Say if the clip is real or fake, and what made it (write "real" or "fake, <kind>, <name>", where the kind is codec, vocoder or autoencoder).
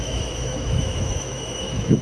fake, autoencoder, DAC-VAE